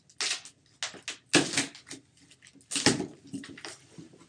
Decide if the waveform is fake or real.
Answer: real